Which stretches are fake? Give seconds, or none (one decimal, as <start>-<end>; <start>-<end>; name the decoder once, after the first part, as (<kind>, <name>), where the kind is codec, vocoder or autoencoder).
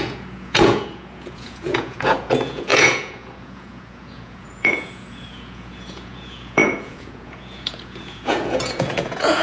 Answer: 0.0-9.4 (vocoder, Vocos)